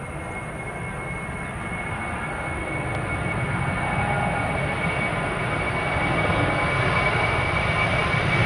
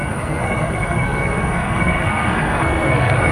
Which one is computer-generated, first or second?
second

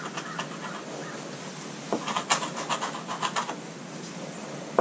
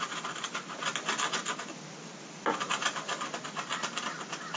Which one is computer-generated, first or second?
second